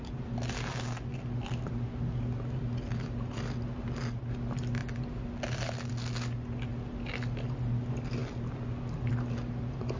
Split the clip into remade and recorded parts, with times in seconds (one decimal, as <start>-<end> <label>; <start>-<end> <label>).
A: 0.0-10.0 recorded